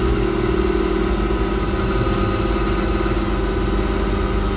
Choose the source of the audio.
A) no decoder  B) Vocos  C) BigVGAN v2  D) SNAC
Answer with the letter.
A